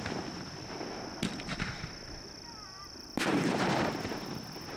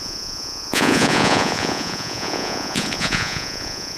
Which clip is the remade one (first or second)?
second